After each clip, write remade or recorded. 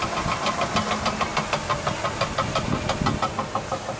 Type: recorded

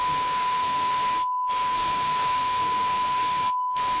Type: remade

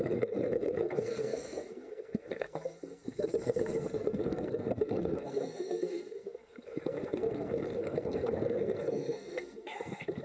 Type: remade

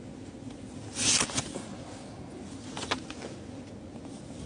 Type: recorded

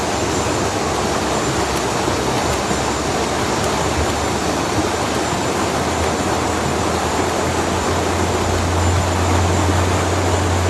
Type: recorded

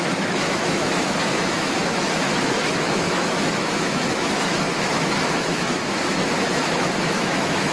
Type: remade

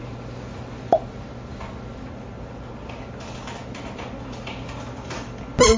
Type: recorded